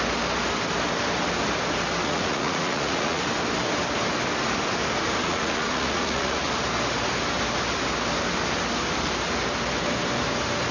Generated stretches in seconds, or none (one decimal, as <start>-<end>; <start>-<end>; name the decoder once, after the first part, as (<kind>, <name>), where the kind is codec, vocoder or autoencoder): 2.0-3.2 (vocoder, Vocos); 5.2-6.5